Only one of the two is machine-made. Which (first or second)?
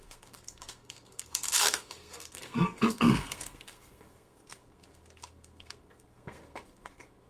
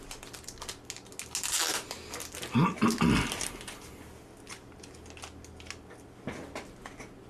first